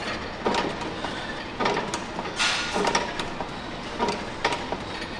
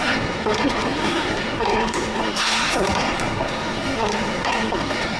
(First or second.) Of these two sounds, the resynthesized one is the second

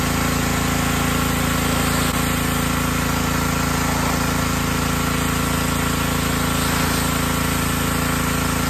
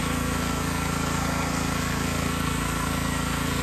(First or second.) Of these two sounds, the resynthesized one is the second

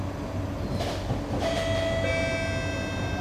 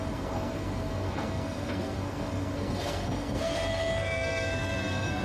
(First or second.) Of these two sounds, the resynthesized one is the second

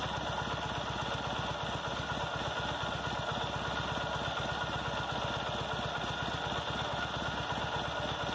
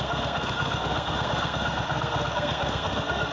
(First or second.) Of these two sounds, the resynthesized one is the second